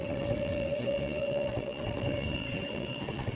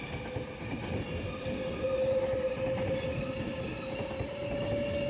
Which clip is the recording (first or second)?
second